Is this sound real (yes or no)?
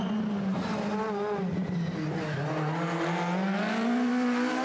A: yes